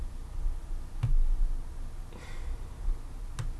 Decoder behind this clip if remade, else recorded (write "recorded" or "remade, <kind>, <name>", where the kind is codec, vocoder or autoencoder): recorded